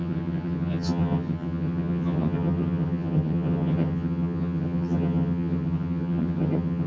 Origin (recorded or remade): remade